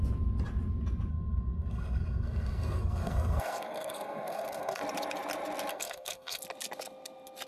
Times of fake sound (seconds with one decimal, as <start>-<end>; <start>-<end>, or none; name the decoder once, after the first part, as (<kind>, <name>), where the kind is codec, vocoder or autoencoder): 1.1-4.8 (codec, SNAC); 5.7-6.4